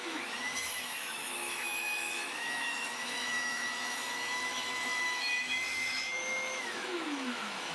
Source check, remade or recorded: remade